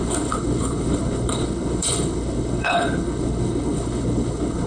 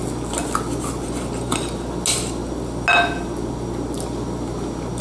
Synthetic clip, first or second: first